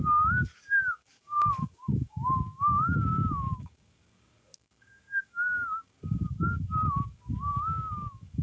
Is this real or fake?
fake